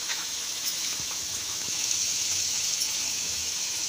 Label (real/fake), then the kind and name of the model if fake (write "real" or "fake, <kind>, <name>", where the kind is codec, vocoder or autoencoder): fake, autoencoder, DAC-VAE